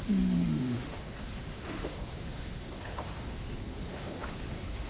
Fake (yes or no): yes